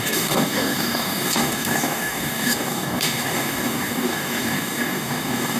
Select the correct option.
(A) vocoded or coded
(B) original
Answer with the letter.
A